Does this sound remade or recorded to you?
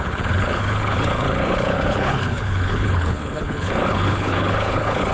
remade